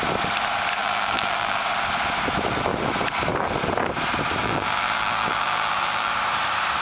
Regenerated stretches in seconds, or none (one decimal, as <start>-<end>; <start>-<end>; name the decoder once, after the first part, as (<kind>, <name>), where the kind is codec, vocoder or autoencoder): 0.8-1.6 (vocoder, BigVGAN v2); 4.4-6.1